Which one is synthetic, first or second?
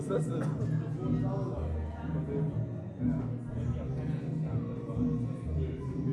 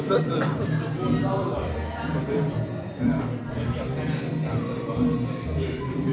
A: second